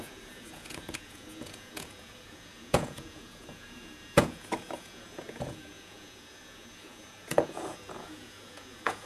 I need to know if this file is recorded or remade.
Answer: remade